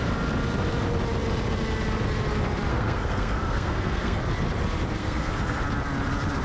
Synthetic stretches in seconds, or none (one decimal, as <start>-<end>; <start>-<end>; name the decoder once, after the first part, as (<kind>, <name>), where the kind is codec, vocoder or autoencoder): 2.7-4.2 (codec, SNAC); 5.0-5.6